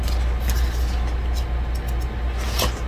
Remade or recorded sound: recorded